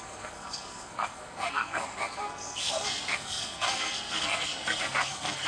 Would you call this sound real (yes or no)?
no